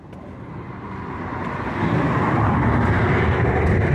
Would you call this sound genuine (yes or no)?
yes